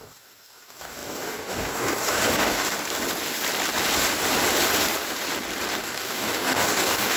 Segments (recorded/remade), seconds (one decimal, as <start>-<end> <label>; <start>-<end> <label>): 0.0-2.7 remade; 2.7-5.8 recorded; 5.8-7.2 remade